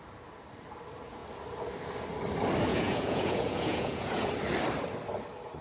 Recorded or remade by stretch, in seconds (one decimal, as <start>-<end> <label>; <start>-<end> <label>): 0.0-2.7 recorded; 2.7-4.3 remade; 4.3-5.6 recorded

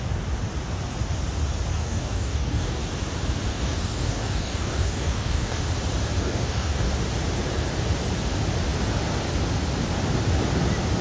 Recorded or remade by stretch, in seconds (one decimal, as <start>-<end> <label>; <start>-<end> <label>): 0.0-1.7 recorded; 1.7-2.8 remade; 2.8-3.5 recorded; 3.5-5.6 remade; 5.6-6.2 recorded; 6.2-6.9 remade; 6.9-11.0 recorded

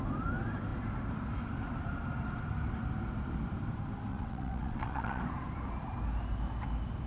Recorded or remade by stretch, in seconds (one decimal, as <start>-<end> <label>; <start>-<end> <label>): 0.0-4.1 recorded; 4.1-5.2 remade; 5.2-7.1 recorded

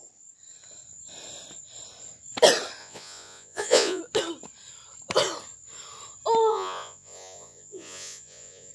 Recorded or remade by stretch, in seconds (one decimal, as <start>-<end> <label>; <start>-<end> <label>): 0.0-2.8 recorded; 2.8-4.0 remade; 4.0-6.5 recorded; 6.5-8.7 remade

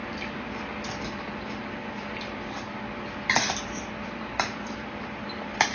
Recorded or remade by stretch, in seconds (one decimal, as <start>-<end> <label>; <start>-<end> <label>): 0.0-3.4 recorded; 3.4-5.7 remade

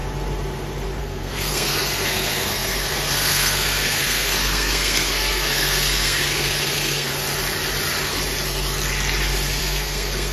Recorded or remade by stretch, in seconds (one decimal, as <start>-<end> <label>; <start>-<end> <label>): 0.0-1.0 recorded; 1.0-7.1 remade; 7.1-9.6 recorded; 9.6-10.3 remade

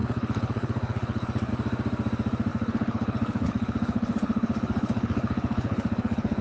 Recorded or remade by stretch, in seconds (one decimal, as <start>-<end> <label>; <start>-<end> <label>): 0.0-1.5 remade; 1.5-2.5 recorded; 2.5-6.4 remade